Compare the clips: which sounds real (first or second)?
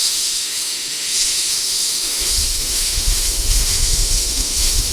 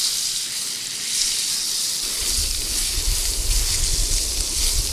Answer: second